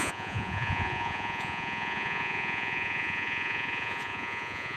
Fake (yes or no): yes